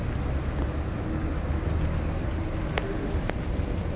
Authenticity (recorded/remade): recorded